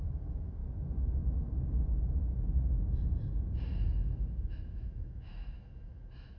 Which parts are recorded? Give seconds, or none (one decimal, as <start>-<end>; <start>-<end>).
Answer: 0.6-4.4